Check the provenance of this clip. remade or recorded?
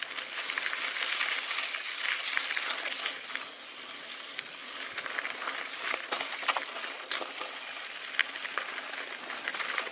recorded